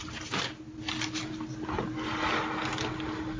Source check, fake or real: real